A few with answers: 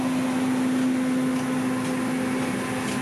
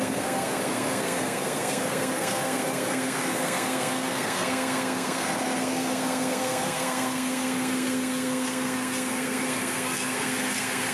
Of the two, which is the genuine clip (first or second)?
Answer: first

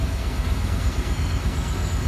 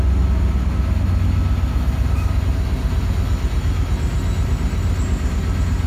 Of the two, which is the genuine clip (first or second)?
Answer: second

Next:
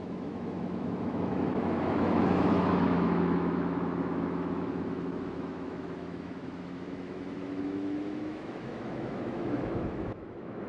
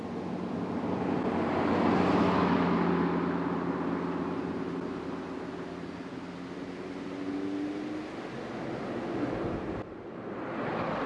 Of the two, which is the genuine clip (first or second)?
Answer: second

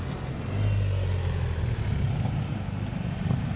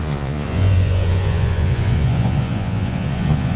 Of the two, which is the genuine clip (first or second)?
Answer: first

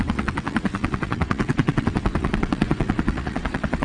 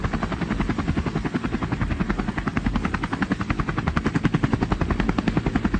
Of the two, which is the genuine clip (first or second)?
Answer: second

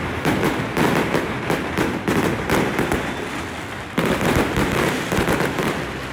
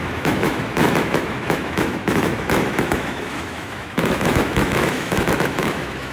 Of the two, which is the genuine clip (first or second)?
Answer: first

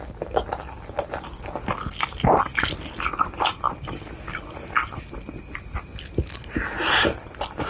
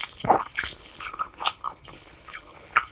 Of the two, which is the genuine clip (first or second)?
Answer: first